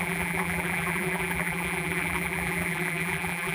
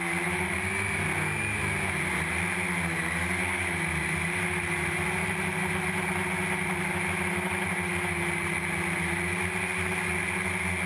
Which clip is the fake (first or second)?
first